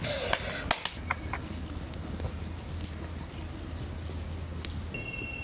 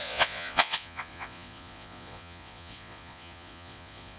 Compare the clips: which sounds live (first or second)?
first